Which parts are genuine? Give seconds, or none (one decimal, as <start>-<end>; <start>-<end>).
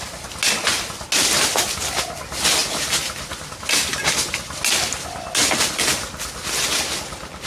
0.0-7.5